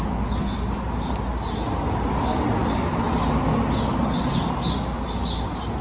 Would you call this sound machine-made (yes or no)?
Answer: no